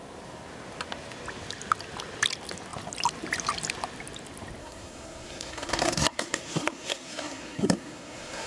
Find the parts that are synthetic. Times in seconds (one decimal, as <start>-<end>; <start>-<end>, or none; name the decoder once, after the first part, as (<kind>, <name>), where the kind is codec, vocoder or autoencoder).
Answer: 4.6-8.5 (codec, SNAC)